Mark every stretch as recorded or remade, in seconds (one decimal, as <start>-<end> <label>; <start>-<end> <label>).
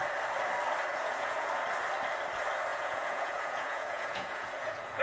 0.0-0.9 recorded; 0.9-1.5 remade; 1.5-2.7 recorded; 2.7-5.0 remade